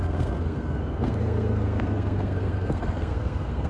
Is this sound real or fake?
fake